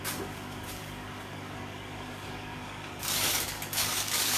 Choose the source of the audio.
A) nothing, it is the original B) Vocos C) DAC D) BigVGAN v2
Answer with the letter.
C